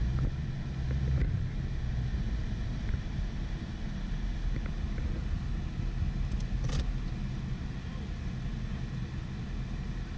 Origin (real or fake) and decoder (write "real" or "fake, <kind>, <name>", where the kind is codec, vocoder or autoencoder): real